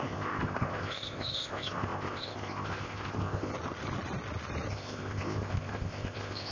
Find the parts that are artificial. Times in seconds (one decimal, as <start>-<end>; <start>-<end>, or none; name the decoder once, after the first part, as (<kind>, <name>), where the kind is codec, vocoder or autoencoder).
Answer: 0.0-3.5 (codec, ZipCodec); 4.7-6.5